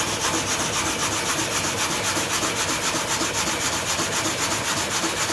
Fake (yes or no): no